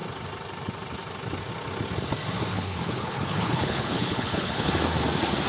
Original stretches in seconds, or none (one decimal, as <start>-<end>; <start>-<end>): 0.0-2.5; 4.7-5.5